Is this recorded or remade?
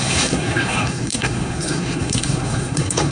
remade